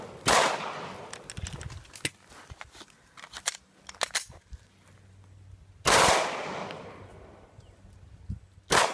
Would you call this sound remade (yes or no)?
no